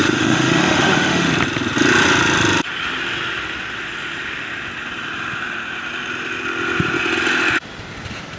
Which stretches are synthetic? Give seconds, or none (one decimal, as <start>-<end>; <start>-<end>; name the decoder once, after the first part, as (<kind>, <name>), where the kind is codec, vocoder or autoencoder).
0.0-1.3 (autoencoder, DAC-VAE)